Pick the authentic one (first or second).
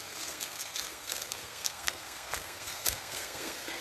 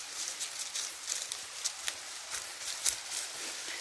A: second